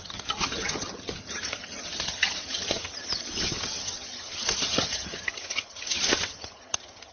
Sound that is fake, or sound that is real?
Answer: fake